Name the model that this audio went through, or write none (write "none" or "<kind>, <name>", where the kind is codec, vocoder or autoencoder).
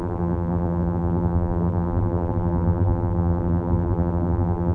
vocoder, BigVGAN v2